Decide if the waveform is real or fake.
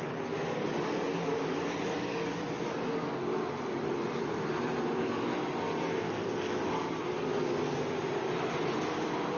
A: real